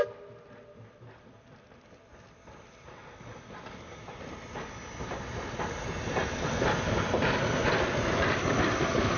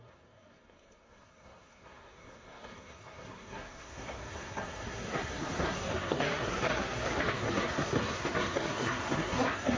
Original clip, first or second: first